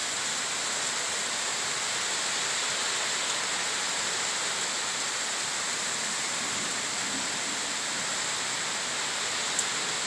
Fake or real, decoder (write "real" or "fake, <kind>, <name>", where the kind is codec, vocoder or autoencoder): real